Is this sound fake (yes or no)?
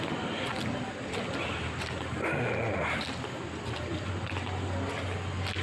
no